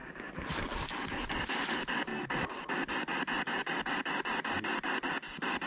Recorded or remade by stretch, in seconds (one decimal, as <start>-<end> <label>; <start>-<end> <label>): 0.0-0.6 remade; 0.6-5.7 recorded